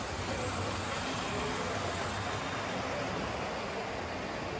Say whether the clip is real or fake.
real